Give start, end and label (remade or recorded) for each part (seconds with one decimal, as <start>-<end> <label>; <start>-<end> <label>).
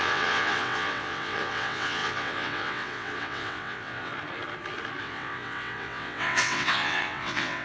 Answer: 0.0-4.1 remade; 4.1-5.0 recorded; 5.0-7.6 remade